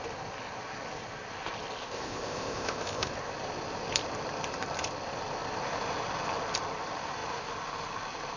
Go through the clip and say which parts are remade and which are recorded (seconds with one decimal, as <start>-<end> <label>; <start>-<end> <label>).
0.0-1.8 recorded; 1.8-3.1 remade; 3.1-8.4 recorded